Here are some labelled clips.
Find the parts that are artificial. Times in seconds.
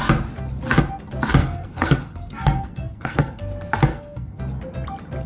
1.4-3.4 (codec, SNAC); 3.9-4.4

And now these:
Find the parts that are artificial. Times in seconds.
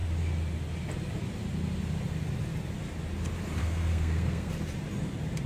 3.6-4.5 (codec, SNAC)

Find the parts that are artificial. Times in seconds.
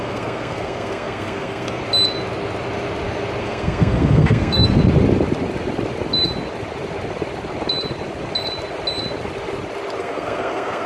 0.0-1.8 (codec, SNAC); 3.4-4.8; 10.0-10.9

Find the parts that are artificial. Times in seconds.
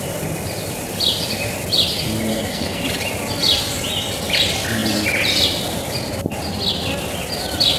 2.3-2.8 (codec, SNAC)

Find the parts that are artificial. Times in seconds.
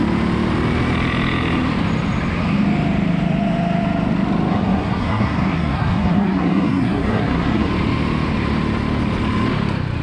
4.5-7.7 (codec, SNAC)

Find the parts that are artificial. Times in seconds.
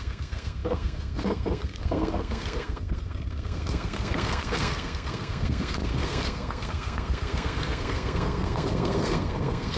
0.0-9.8 (codec, SNAC)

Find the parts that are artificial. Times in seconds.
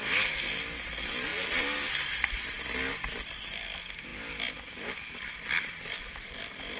none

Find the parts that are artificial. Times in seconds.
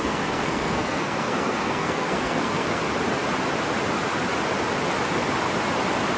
0.0-2.8 (codec, SNAC)